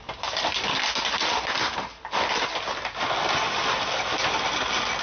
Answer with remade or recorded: recorded